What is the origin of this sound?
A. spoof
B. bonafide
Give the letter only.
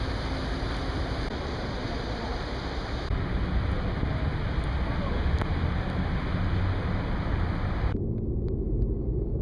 B